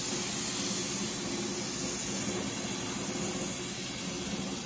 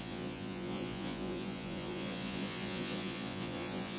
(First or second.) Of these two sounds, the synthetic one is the second